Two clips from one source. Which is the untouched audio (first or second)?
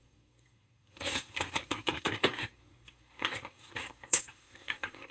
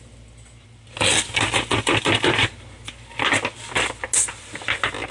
second